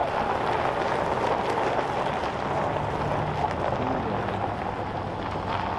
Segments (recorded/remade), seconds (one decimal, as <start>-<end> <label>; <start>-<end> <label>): 0.0-5.8 recorded